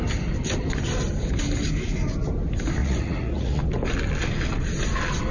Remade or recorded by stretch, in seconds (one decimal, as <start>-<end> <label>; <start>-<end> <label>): 0.0-2.8 recorded; 2.8-3.6 remade; 3.6-5.3 recorded